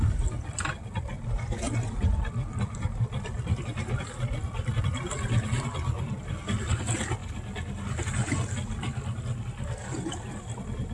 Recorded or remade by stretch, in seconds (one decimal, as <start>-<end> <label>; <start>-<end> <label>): 0.0-10.9 recorded